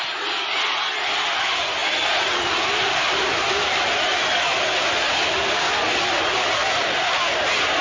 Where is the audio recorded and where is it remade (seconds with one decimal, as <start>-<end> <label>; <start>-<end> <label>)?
0.0-7.8 recorded